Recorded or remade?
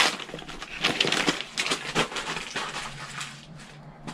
recorded